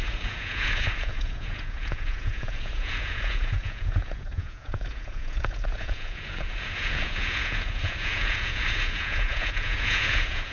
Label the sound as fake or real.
fake